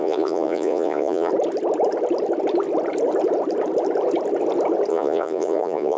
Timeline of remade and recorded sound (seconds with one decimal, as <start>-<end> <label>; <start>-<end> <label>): 0.0-1.3 remade; 1.3-4.9 recorded; 4.9-6.0 remade